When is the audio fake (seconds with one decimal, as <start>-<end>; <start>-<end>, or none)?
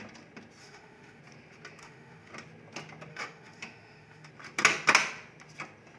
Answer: 0.6-1.2; 1.8-2.3; 3.1-4.3